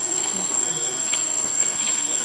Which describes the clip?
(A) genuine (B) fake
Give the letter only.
B